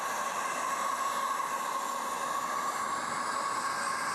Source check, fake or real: real